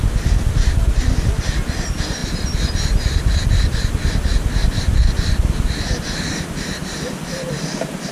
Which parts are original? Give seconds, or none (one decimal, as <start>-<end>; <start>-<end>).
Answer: 0.0-4.6; 6.0-6.8